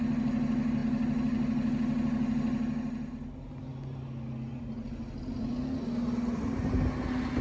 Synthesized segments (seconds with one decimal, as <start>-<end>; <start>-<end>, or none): none